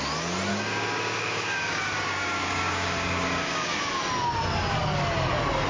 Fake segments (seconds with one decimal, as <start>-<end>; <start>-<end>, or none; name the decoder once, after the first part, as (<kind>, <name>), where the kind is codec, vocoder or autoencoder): 0.5-3.9 (codec, DAC)